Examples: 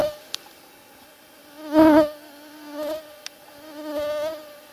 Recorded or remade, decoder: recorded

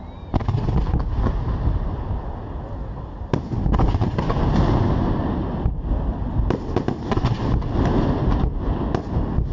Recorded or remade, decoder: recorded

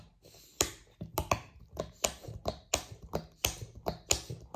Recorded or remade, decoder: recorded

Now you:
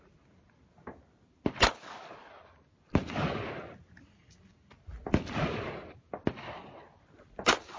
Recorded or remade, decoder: recorded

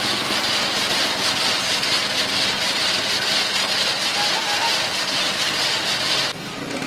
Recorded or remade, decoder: recorded